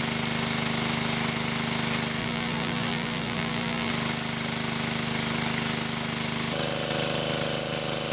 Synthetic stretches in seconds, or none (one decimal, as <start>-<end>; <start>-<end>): 2.2-3.9